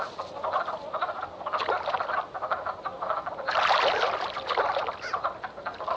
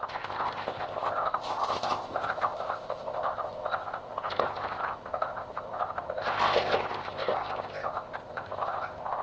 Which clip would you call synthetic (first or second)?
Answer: second